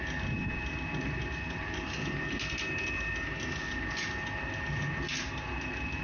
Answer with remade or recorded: recorded